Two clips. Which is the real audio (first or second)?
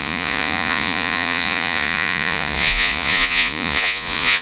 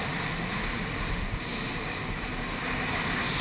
second